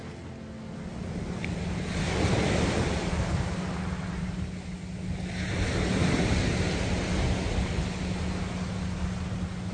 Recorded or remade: recorded